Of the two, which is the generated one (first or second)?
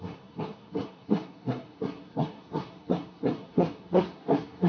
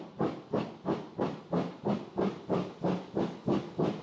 first